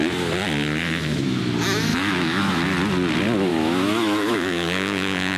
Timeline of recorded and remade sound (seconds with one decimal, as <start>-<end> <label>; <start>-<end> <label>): 0.0-0.8 recorded; 0.8-1.4 remade; 1.4-1.9 recorded; 1.9-2.6 remade; 2.6-3.5 recorded; 3.5-5.4 remade